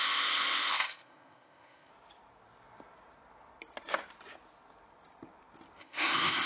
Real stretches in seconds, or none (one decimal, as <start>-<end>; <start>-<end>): 1.9-5.8